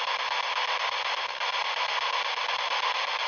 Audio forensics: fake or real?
real